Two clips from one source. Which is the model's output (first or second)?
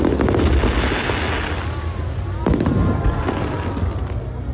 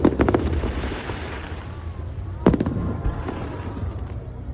second